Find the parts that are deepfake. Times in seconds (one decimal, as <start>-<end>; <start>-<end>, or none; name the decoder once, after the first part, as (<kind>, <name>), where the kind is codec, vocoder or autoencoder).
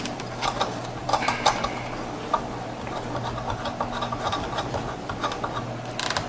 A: 1.0-2.0 (vocoder, BigVGAN v2)